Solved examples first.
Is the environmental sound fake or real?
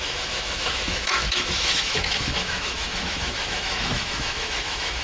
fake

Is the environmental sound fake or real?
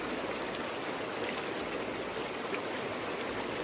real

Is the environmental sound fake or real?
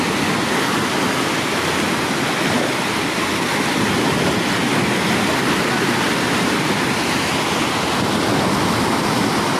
real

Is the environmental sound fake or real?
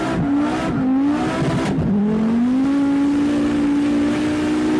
real